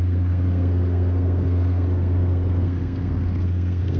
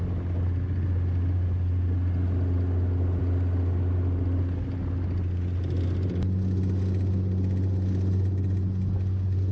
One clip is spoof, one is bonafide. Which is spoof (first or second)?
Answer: first